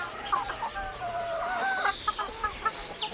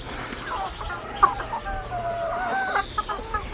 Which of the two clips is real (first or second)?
second